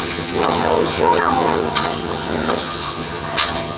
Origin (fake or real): fake